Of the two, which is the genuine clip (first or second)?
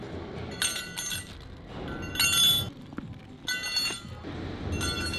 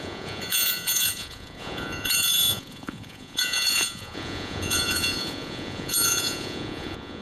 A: first